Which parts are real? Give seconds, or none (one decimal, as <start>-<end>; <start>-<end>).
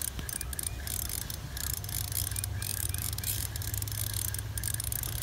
0.0-2.7; 3.7-5.2